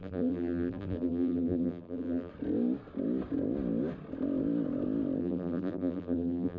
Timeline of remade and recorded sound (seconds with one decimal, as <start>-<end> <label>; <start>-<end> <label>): 0.0-2.3 remade; 2.3-5.2 recorded; 5.2-6.6 remade